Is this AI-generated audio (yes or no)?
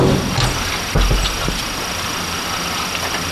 no